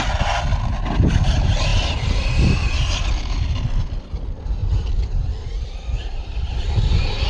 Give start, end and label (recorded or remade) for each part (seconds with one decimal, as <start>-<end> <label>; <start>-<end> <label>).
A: 0.0-7.3 recorded